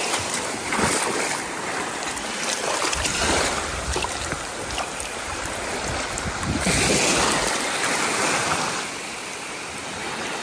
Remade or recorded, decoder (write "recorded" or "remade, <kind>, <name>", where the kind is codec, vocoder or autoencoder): remade, vocoder, BigVGAN v2